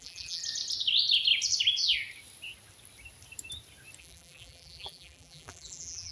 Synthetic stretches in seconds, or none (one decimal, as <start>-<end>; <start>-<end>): 0.0-0.4; 4.0-6.1